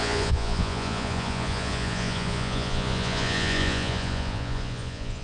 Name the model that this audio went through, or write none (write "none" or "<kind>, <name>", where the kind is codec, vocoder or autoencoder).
vocoder, Vocos